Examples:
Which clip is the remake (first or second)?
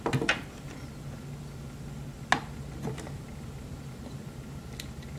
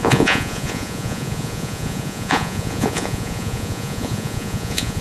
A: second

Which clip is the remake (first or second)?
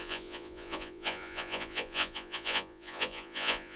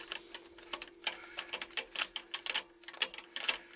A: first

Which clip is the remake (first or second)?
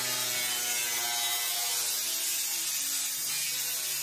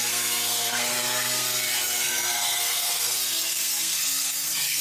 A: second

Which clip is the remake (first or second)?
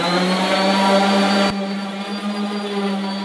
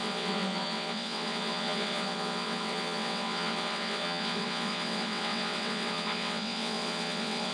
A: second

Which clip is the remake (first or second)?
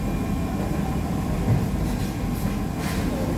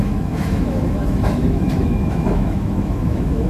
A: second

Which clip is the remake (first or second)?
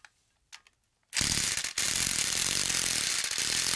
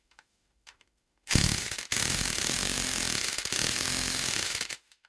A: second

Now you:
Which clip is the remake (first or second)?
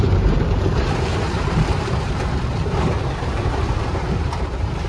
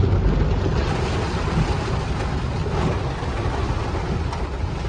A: first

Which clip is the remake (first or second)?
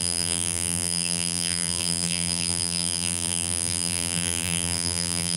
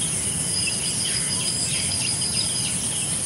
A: first